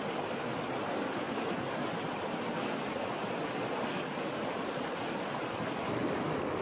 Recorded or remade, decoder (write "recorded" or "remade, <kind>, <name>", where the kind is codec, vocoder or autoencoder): recorded